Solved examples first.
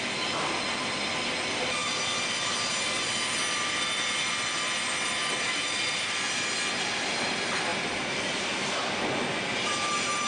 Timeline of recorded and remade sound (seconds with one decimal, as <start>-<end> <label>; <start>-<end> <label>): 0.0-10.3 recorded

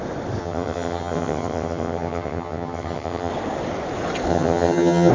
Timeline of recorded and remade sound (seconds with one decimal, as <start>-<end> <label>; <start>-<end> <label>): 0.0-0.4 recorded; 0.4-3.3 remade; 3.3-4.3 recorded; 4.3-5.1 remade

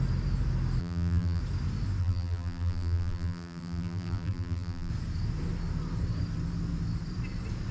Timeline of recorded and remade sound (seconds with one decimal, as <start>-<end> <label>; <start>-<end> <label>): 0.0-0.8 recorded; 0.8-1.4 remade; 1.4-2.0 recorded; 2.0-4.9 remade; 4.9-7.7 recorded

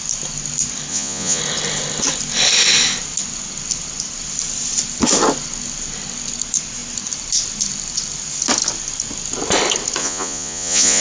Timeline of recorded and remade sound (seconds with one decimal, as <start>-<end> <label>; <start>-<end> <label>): 0.0-0.9 recorded; 0.9-1.4 remade; 1.4-10.0 recorded; 10.0-11.0 remade